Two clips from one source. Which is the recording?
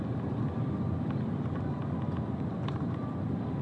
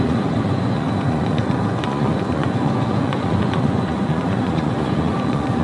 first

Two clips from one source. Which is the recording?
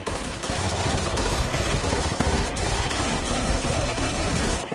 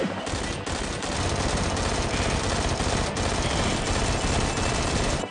second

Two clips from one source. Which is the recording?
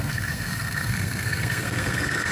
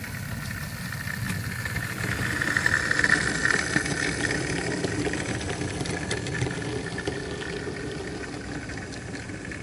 second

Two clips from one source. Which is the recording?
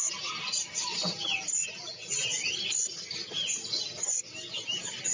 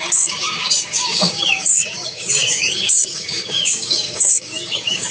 first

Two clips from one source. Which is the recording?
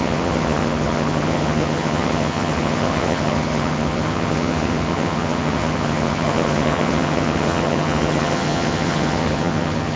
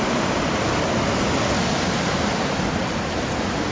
second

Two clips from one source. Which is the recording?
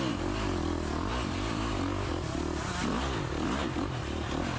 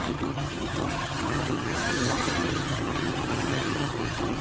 first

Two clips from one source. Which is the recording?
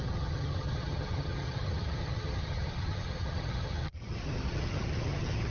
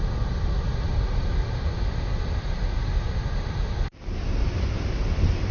second